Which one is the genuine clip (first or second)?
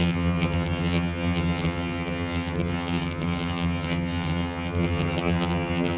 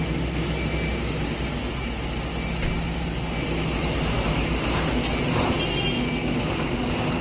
second